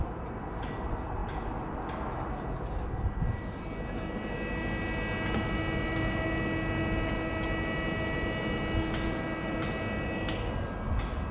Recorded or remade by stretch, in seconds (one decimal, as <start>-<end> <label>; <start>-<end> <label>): 0.0-11.3 recorded